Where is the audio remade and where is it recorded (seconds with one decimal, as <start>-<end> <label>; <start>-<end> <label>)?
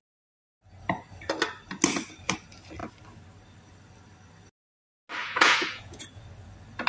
0.0-5.2 recorded; 5.2-6.2 remade; 6.2-6.9 recorded